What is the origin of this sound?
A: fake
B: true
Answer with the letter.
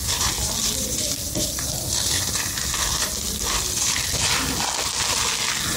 B